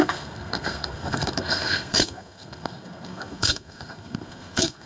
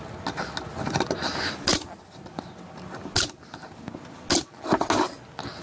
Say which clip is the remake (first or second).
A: first